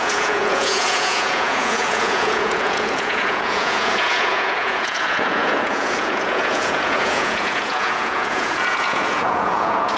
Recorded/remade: remade